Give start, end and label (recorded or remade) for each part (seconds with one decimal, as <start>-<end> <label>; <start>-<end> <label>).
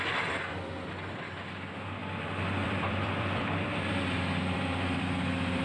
0.0-2.0 recorded; 2.0-5.6 remade